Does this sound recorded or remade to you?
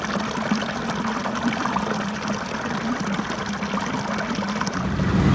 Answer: recorded